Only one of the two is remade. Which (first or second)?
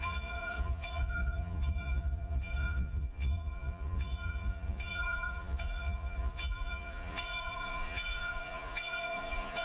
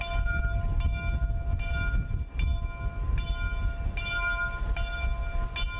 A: first